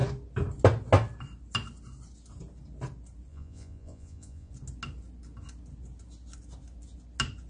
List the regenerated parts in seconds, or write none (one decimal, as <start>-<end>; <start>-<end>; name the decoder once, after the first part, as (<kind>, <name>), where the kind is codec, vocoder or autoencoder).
3.3-4.5 (vocoder, Vocos)